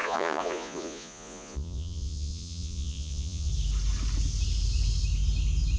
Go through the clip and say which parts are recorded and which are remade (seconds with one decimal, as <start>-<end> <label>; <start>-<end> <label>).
0.0-3.5 remade; 3.5-5.8 recorded